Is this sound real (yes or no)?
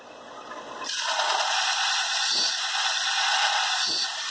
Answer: yes